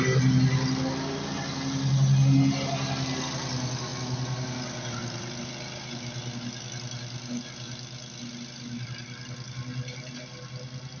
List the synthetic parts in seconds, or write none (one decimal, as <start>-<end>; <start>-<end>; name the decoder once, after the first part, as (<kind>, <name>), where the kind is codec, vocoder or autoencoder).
none